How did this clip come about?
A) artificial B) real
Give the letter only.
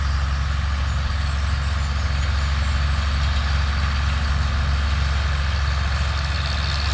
B